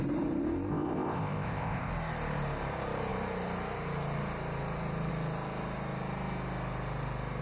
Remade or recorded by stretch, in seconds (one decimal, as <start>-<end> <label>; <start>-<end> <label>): 0.0-0.7 recorded; 0.7-1.9 remade; 1.9-7.4 recorded